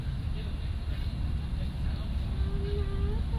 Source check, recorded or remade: recorded